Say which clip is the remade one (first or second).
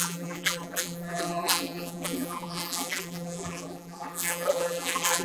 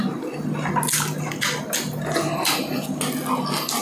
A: first